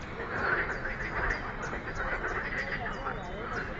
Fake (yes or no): no